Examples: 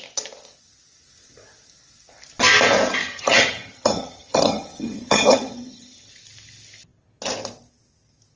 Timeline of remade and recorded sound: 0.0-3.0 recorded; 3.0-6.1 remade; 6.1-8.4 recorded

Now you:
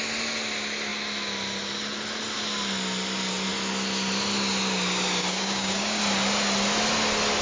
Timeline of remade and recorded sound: 0.0-5.2 recorded; 5.2-6.0 remade; 6.0-7.4 recorded

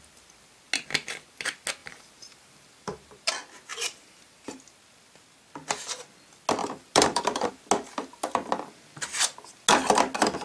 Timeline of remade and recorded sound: 0.0-1.8 recorded; 1.8-3.3 remade; 3.3-3.7 recorded; 3.7-4.6 remade; 4.6-6.6 recorded; 6.6-7.5 remade; 7.5-10.4 recorded

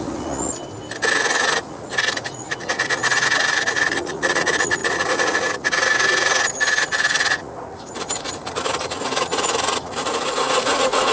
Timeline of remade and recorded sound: 0.0-0.6 remade; 0.6-1.1 recorded; 1.1-11.1 remade

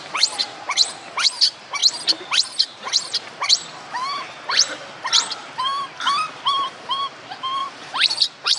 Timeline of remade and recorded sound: 0.0-0.4 recorded; 0.4-0.9 remade; 0.9-7.6 recorded; 7.6-8.6 remade